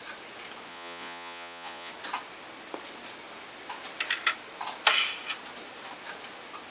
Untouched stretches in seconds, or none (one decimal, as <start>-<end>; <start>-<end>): 0.0-0.7; 1.9-6.7